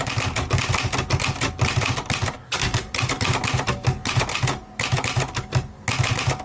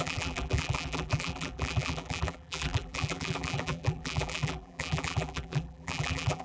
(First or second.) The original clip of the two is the first